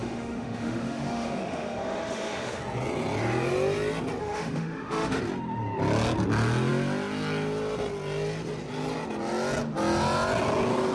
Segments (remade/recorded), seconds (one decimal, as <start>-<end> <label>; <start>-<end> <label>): 0.0-2.6 remade; 2.6-4.2 recorded; 4.2-5.2 remade; 5.2-10.9 recorded